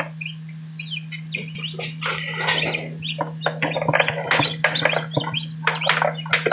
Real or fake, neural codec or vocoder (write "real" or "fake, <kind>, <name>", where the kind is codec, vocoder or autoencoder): real